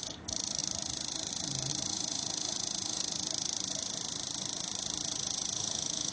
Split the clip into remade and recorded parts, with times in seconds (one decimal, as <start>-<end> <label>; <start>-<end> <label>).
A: 0.0-1.9 recorded; 1.9-3.1 remade; 3.1-5.0 recorded; 5.0-6.1 remade